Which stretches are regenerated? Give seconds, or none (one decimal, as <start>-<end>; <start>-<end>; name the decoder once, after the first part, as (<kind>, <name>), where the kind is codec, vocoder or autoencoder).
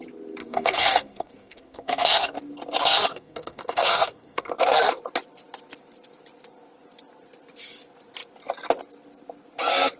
0.4-2.4 (codec, SNAC); 3.1-4.5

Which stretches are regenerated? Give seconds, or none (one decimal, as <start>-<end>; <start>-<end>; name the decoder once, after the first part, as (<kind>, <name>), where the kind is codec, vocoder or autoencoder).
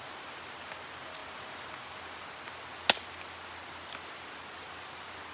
1.2-2.2 (vocoder, BigVGAN v2)